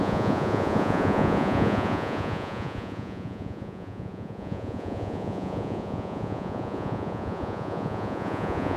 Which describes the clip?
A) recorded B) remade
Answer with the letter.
B